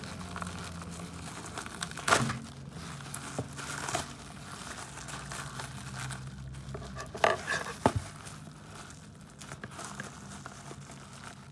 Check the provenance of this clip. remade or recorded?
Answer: recorded